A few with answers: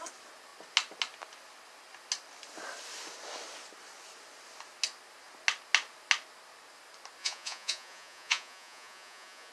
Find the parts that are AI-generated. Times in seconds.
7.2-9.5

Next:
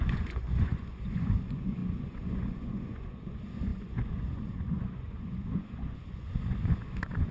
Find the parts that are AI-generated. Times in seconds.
0.0-7.3

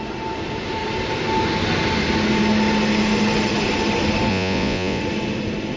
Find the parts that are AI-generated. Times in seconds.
4.3-5.0

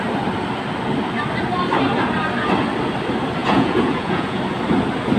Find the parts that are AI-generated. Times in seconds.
3.4-4.4

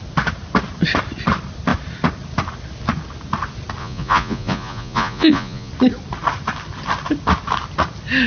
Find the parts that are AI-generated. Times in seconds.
3.8-5.7

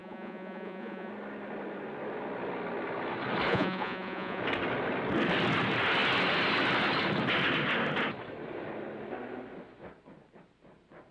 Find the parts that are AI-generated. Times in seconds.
0.0-1.1; 3.5-4.4

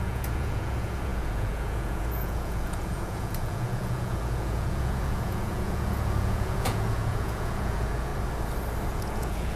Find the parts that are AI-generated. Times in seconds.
0.0-8.1; 8.9-9.6

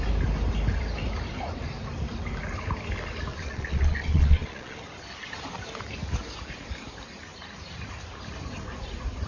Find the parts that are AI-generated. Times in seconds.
3.3-4.8